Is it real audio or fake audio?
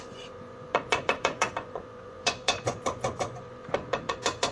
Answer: fake